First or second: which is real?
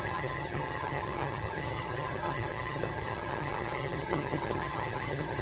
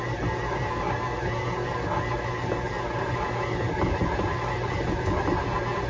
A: second